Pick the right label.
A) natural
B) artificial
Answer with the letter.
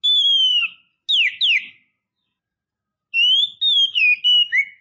A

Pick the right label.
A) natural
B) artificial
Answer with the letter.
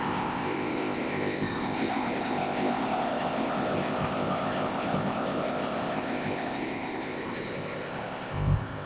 B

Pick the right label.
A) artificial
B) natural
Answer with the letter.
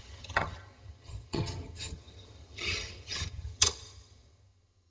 A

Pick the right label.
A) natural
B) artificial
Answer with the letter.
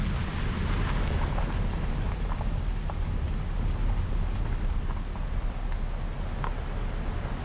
A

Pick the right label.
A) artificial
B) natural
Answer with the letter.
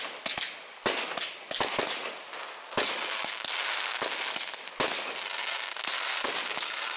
B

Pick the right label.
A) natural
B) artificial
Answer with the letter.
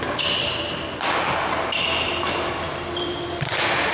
A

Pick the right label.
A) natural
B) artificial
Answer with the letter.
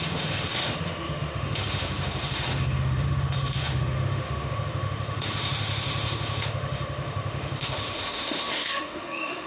B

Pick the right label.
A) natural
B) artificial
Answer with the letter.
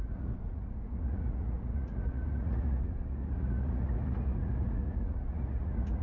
B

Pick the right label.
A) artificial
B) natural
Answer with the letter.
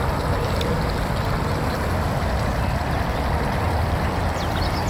B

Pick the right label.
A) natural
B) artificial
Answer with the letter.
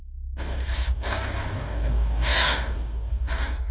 B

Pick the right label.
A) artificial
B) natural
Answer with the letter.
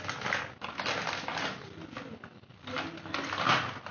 B